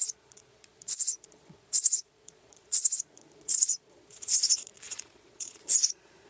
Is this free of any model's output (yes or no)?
no